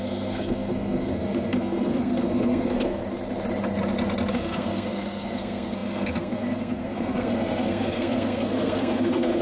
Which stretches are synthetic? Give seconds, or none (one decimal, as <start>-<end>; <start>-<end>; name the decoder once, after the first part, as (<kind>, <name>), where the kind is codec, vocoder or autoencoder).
0.0-3.0 (codec, SNAC); 4.3-9.4